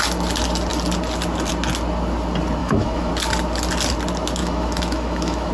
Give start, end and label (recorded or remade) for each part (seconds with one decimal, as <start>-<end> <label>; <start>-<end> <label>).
0.0-2.6 recorded; 2.6-3.1 remade; 3.1-4.4 recorded; 4.4-5.5 remade